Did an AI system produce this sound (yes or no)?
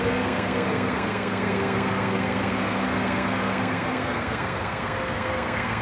yes